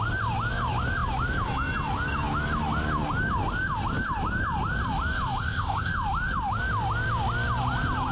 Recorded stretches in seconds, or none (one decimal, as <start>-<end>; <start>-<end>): 0.0-5.4; 5.9-8.1